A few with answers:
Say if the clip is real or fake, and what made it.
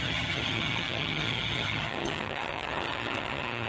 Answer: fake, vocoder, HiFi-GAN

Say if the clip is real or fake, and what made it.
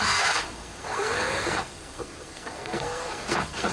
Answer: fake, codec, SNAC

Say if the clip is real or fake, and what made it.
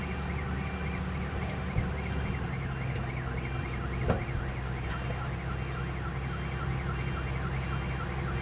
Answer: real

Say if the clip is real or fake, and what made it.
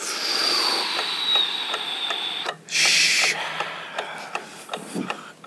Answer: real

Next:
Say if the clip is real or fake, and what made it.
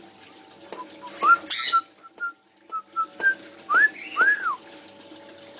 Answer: real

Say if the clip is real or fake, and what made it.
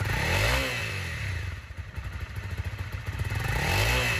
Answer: real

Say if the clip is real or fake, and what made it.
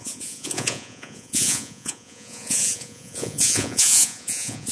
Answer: fake, vocoder, Vocos